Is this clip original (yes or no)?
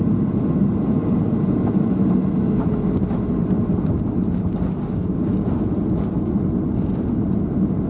yes